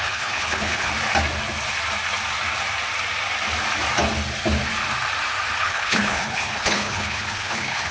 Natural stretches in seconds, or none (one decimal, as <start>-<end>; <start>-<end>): 0.9-5.6

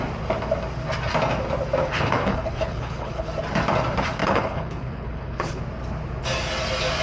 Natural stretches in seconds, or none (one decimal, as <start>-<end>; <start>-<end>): 0.0-1.8; 3.3-4.2; 5.6-7.0

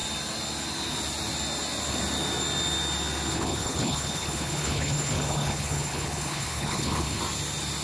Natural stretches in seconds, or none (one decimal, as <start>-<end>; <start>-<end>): 0.0-3.3; 7.2-7.8

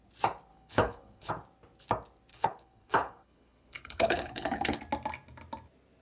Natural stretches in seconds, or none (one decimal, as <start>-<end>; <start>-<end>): 0.0-0.5; 1.3-2.3; 4.8-6.0

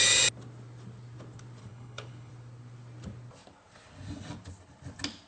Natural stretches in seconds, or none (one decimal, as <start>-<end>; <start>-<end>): 0.0-1.6; 2.3-5.3

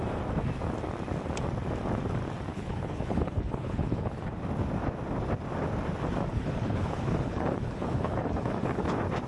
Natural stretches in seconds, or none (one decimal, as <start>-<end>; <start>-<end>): 0.0-2.5; 4.3-6.3; 8.8-9.3

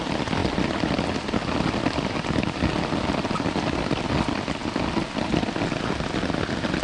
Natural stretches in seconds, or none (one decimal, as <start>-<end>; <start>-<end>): 0.0-6.8